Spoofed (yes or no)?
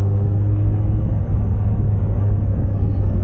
yes